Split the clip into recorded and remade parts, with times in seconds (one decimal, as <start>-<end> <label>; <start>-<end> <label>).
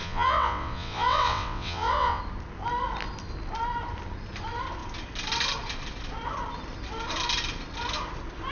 0.0-2.2 remade; 2.2-8.5 recorded